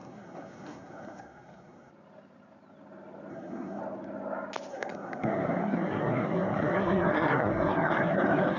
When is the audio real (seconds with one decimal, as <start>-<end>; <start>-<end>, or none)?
1.9-3.3; 3.8-4.7